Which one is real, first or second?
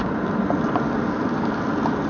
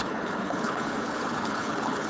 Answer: first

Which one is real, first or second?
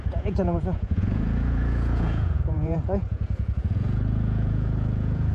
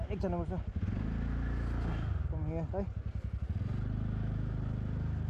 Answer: second